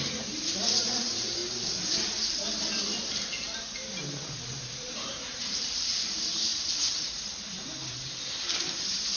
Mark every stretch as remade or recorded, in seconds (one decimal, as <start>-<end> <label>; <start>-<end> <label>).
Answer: 0.0-1.4 remade; 1.4-3.0 recorded; 3.0-9.2 remade